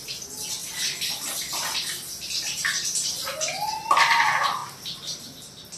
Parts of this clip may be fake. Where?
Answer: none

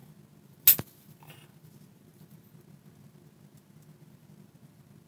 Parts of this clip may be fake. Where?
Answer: none

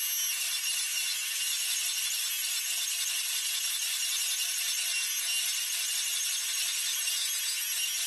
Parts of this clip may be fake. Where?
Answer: 0.9-1.8 (autoencoder, DAC-VAE)

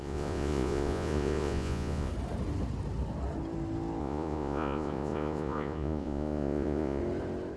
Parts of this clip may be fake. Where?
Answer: 0.0-2.1 (vocoder, Vocos); 4.0-7.0

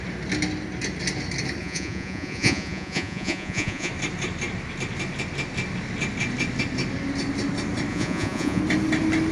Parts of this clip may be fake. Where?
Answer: 1.6-3.9 (vocoder, Vocos); 7.9-8.6

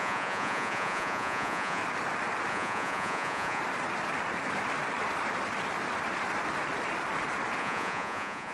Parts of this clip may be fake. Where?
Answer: 0.0-1.8 (vocoder, Vocos); 2.5-3.6; 7.6-8.5